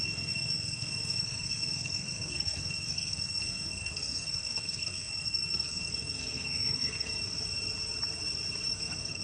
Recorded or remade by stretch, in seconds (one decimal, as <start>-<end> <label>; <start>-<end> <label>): 0.0-7.1 remade; 7.1-8.7 recorded; 8.7-9.2 remade